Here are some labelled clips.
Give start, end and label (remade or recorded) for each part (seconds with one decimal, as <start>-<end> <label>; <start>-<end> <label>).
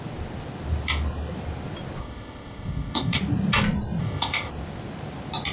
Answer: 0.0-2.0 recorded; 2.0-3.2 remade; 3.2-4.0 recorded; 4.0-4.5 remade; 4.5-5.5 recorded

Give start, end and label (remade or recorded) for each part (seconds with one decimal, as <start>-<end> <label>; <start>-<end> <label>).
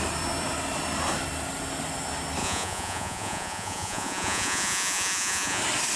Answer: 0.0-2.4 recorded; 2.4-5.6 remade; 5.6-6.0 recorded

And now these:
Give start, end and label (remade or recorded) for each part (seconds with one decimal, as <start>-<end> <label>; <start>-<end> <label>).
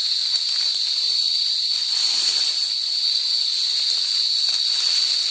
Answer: 0.0-0.6 recorded; 0.6-1.7 remade; 1.7-5.3 recorded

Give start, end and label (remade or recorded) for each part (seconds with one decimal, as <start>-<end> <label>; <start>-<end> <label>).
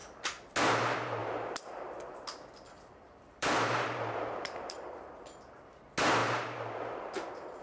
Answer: 0.0-1.2 recorded; 1.2-5.0 remade; 5.0-6.2 recorded; 6.2-7.6 remade